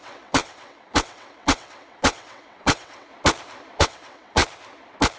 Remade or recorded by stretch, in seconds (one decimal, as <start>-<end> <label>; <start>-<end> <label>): 0.0-3.1 remade; 3.1-3.8 recorded; 3.8-4.4 remade; 4.4-5.2 recorded